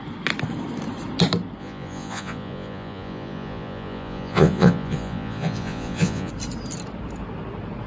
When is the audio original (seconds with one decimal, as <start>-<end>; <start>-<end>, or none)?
0.0-1.6; 6.3-7.9